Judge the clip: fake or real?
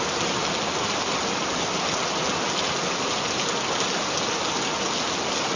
real